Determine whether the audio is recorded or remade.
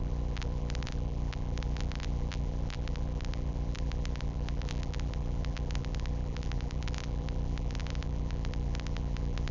remade